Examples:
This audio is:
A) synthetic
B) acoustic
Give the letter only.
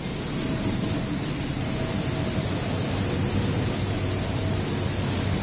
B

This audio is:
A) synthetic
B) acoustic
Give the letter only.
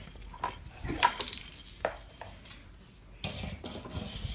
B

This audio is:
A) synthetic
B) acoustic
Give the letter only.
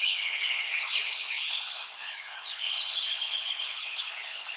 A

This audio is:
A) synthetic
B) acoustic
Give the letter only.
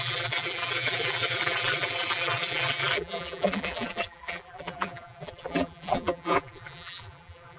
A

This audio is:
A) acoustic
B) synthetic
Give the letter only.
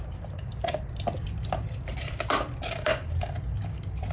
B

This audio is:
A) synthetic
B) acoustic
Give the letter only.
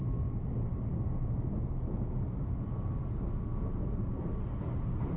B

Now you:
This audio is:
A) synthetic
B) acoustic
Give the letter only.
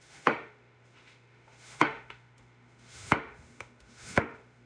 A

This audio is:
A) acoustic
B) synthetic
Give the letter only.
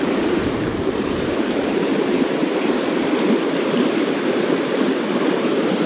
B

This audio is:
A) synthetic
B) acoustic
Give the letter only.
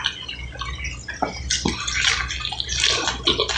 B